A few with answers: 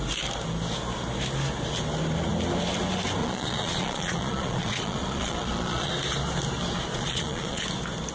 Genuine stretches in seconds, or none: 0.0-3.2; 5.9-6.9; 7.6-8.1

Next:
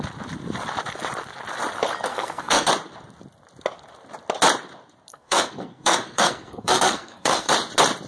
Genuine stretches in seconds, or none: 0.0-2.1; 2.7-5.1; 7.5-8.1

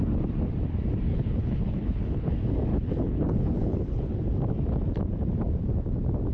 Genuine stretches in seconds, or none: 0.0-1.1; 2.3-2.7; 4.2-6.3

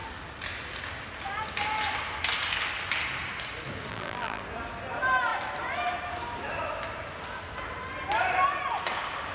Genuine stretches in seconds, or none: 0.0-3.9; 4.4-9.3

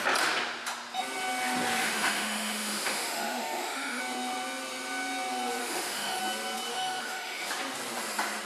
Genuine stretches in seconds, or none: 0.0-1.8; 4.0-5.6; 6.2-6.7; 7.5-8.5

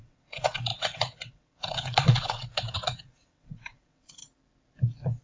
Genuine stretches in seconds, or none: 4.2-5.2